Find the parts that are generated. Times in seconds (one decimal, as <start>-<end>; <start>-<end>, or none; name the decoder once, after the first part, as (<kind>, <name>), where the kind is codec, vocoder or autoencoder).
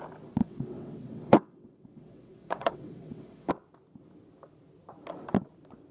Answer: 0.4-3.5 (vocoder, WaveNeXt)